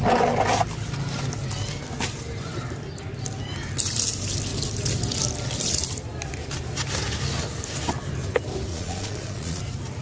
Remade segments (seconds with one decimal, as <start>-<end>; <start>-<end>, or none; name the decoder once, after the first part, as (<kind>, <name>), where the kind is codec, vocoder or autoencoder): 8.7-9.6 (vocoder, Vocos)